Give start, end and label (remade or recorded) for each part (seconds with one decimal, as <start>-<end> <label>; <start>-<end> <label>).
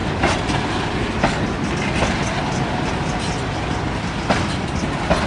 0.0-5.3 recorded